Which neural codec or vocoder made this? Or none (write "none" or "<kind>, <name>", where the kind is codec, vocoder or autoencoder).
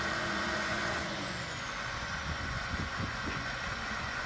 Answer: vocoder, Vocos